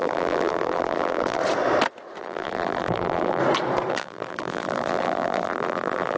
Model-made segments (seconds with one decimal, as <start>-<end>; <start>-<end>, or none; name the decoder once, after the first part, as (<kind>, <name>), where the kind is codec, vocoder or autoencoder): 0.0-1.4 (vocoder, BigVGAN v2); 2.2-3.4; 3.9-6.2